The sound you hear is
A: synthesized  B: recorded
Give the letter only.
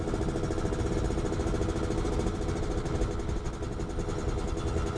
B